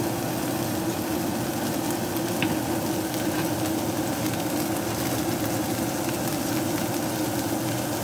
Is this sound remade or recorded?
recorded